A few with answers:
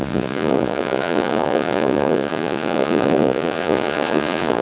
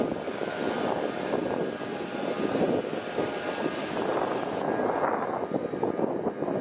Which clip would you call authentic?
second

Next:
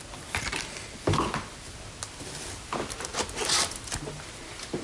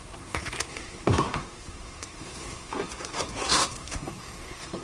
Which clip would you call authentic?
first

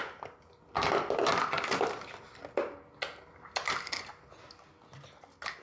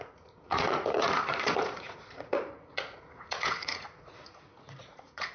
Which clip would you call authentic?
first